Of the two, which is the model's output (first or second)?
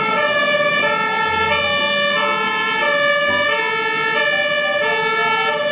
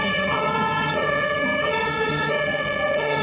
second